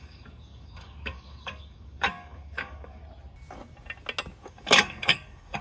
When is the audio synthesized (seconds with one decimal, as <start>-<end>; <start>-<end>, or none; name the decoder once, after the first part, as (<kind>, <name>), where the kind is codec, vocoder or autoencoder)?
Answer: 0.0-3.0 (codec, DAC); 4.4-5.6